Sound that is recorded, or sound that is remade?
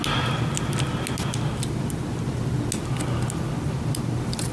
recorded